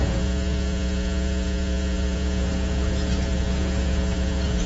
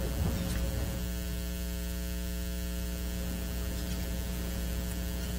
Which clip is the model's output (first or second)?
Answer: first